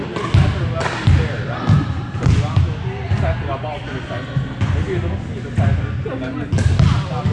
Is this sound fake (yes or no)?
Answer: no